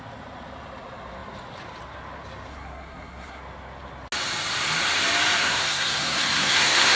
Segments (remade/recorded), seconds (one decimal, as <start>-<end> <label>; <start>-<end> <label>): 0.0-2.5 recorded; 2.5-3.4 remade; 3.4-5.4 recorded; 5.4-7.0 remade